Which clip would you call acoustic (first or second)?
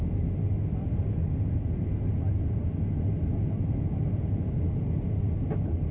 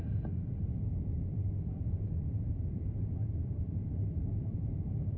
first